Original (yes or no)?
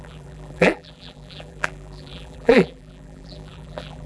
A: no